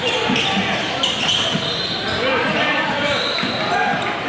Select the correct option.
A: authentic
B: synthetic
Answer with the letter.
A